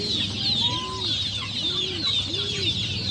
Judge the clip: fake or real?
real